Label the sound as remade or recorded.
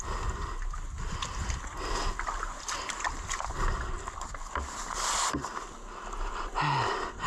recorded